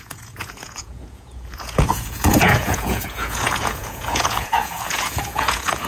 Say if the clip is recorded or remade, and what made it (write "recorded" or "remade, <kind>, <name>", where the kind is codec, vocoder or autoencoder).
remade, vocoder, Vocos